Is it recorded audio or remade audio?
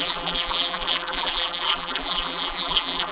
remade